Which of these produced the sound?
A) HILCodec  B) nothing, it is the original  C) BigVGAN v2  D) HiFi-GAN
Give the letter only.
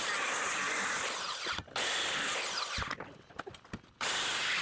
B